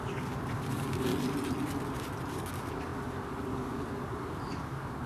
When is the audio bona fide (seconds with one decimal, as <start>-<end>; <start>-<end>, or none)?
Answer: 1.1-2.3

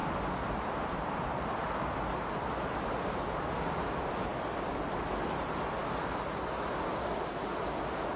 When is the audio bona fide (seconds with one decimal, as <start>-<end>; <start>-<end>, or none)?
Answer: 0.0-8.2

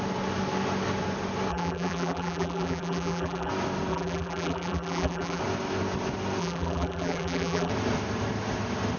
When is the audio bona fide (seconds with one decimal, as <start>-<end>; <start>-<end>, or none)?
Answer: 0.0-1.5; 3.5-3.9; 5.4-6.4; 7.7-9.0

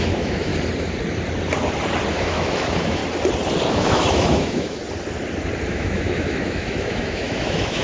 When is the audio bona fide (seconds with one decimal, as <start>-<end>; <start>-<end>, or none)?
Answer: 0.5-2.1; 3.0-3.7; 4.8-5.7

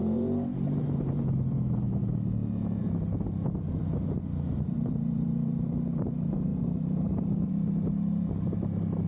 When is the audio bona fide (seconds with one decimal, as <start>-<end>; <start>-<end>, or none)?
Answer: 2.0-2.8

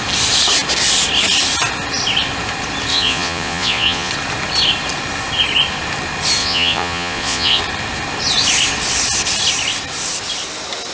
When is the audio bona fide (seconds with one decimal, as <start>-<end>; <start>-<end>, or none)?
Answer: 0.0-2.9; 4.1-6.4; 7.6-10.9